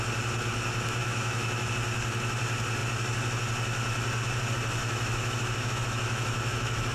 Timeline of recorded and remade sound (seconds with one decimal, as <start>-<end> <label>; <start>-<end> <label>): 0.0-1.0 recorded; 1.0-1.7 remade; 1.7-4.8 recorded; 4.8-6.9 remade